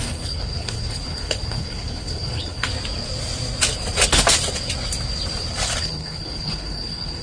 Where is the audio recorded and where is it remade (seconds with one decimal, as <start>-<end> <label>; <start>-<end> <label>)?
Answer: 0.0-2.7 remade; 2.7-5.8 recorded; 5.8-7.2 remade